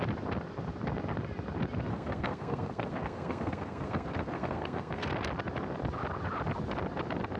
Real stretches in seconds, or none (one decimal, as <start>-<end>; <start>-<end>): 0.0-1.9; 5.1-7.4